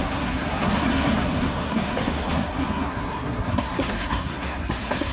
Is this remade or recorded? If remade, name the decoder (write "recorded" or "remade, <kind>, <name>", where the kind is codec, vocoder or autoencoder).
remade, codec, SNAC